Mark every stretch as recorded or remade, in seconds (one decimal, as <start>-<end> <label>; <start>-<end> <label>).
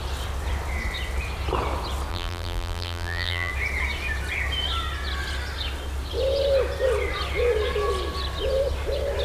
0.0-2.1 recorded; 2.1-3.5 remade; 3.5-9.2 recorded